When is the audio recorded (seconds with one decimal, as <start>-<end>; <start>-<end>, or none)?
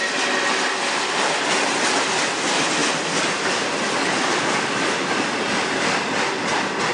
0.0-6.9